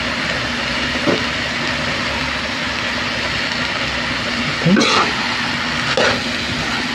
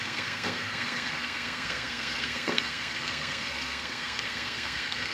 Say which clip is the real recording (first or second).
first